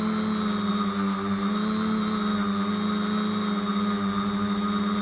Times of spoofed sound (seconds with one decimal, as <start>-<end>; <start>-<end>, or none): none